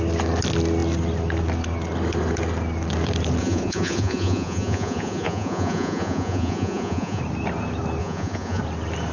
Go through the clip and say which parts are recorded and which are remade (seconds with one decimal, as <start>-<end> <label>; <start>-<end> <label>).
0.0-3.4 recorded; 3.4-7.2 remade; 7.2-8.0 recorded; 8.0-8.6 remade; 8.6-9.1 recorded